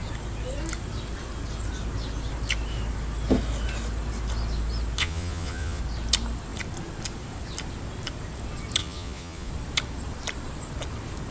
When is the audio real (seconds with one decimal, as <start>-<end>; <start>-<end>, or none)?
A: 0.0-5.0; 5.8-8.8; 9.5-11.3